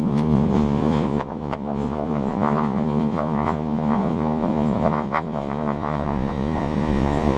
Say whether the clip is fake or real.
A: fake